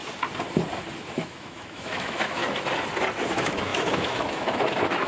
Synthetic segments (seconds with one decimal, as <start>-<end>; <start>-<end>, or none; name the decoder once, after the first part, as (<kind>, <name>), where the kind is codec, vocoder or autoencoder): 1.1-2.4 (autoencoder, DAC-VAE); 3.3-5.1